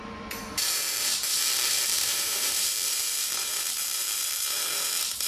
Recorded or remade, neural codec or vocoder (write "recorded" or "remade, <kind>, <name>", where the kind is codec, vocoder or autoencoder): remade, vocoder, BigVGAN v2